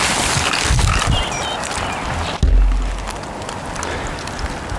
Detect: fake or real real